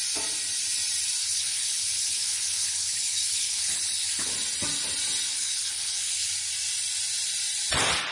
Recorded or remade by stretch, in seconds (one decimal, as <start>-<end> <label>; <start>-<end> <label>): 0.0-1.2 recorded; 1.2-4.3 remade; 4.3-5.3 recorded; 5.3-6.3 remade; 6.3-8.1 recorded

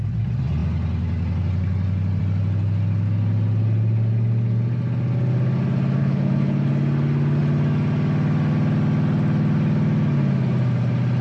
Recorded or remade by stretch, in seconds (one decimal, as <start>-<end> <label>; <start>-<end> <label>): 0.0-6.0 recorded; 6.0-6.7 remade; 6.7-11.2 recorded